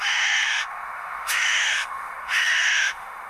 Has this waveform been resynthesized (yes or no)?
yes